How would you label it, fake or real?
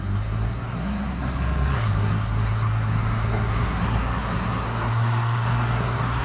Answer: fake